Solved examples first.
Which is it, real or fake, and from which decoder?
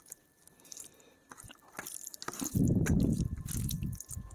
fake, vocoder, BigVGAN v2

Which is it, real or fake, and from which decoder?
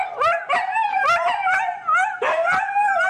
real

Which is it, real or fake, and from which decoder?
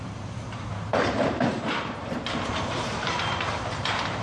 fake, vocoder, BigVGAN v2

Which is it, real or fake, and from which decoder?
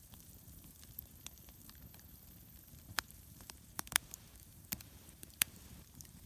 fake, vocoder, BigVGAN v2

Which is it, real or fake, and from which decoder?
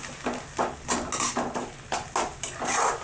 real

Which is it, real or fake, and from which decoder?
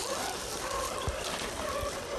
fake, vocoder, BigVGAN v2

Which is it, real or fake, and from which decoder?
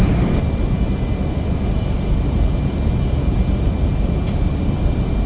fake, vocoder, BigVGAN v2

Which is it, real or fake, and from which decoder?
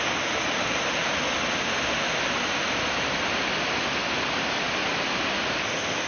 real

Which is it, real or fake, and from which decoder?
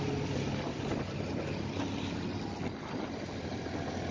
real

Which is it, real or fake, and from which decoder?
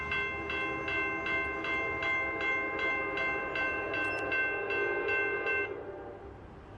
real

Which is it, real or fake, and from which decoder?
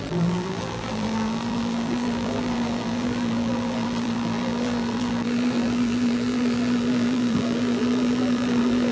fake, vocoder, BigVGAN v2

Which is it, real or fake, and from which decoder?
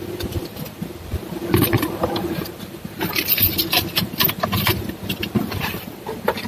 fake, vocoder, BigVGAN v2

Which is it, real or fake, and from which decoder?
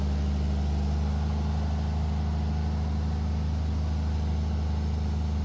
real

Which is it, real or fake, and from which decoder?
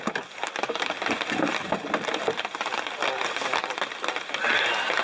real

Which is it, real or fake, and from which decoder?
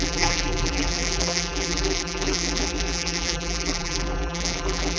fake, vocoder, BigVGAN v2